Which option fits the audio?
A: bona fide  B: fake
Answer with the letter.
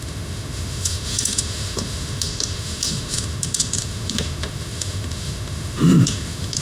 B